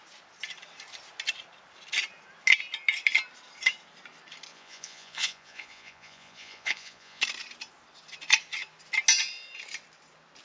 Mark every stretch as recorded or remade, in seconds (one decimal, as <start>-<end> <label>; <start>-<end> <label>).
0.0-4.5 recorded; 4.5-7.2 remade; 7.2-10.4 recorded